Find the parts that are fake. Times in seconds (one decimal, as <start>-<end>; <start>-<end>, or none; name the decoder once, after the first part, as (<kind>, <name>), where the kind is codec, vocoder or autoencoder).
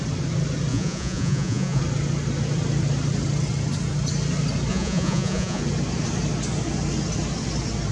0.7-1.8 (vocoder, Vocos); 4.7-5.6